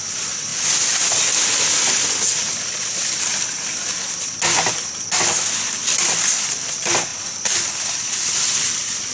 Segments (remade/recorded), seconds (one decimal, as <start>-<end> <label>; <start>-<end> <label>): 0.0-9.1 recorded